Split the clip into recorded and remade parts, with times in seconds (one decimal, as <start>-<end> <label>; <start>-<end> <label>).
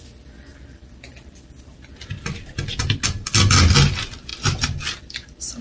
0.0-0.5 remade; 0.5-3.9 recorded; 3.9-5.6 remade